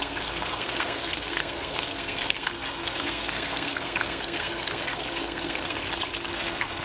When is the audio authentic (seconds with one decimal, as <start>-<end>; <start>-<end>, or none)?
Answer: 5.8-6.3